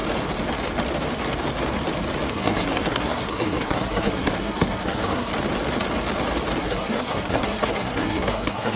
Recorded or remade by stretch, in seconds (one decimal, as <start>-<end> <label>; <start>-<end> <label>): 0.0-2.3 recorded; 2.3-5.3 remade; 5.3-6.6 recorded; 6.6-8.8 remade